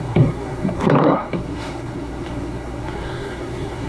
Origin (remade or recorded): remade